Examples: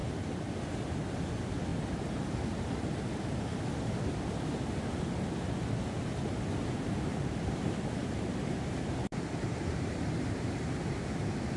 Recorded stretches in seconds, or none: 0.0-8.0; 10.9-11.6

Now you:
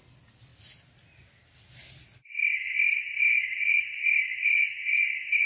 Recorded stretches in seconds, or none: 0.0-5.5